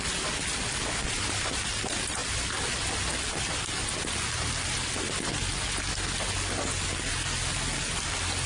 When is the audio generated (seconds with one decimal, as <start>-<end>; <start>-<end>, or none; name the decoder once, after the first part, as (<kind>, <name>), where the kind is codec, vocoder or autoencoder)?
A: none

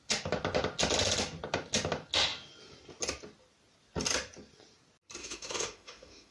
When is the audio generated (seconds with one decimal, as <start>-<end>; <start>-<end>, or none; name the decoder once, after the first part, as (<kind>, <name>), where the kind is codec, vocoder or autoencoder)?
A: 5.2-6.3 (autoencoder, DAC-VAE)

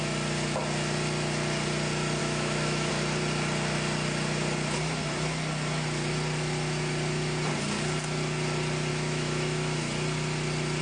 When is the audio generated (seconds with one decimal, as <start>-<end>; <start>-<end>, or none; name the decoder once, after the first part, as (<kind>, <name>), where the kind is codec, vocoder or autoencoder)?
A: 2.2-2.9 (autoencoder, DAC-VAE); 8.9-9.8